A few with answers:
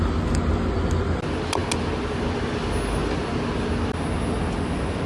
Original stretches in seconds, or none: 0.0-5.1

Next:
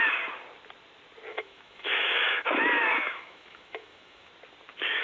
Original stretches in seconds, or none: 0.0-1.3; 4.3-5.0